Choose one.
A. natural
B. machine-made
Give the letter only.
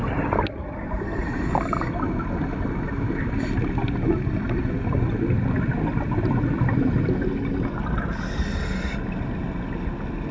A